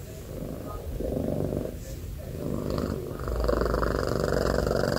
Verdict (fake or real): real